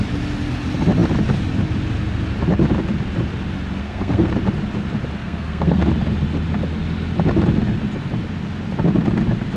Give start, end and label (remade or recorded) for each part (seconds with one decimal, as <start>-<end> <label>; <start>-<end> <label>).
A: 0.0-3.8 recorded; 3.8-4.3 remade; 4.3-5.2 recorded; 5.2-5.8 remade; 5.8-9.6 recorded